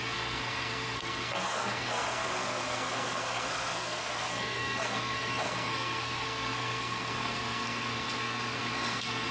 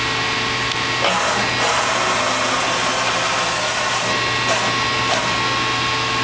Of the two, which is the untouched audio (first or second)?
second